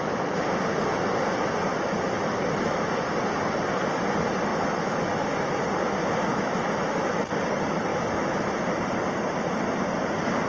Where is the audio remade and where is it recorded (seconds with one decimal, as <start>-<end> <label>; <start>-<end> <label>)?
0.0-1.7 recorded; 1.7-2.9 remade; 2.9-4.5 recorded; 4.5-5.6 remade; 5.6-6.3 recorded; 6.3-7.2 remade; 7.2-7.9 recorded; 7.9-8.5 remade; 8.5-10.5 recorded